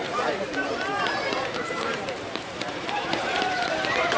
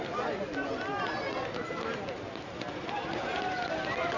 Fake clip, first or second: first